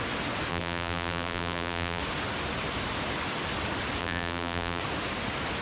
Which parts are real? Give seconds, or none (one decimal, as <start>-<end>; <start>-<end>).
0.0-0.5; 2.0-4.0; 4.8-5.6